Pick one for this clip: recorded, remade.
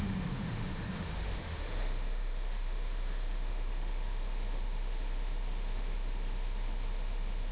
remade